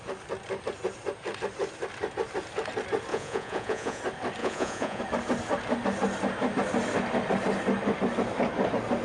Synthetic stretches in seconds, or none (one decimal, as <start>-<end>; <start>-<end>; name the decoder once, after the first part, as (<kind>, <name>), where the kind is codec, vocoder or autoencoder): 3.1-4.0 (vocoder, Vocos); 4.4-5.0